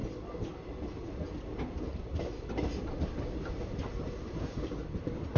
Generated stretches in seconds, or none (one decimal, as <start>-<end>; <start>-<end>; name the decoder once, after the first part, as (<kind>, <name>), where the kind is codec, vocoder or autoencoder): none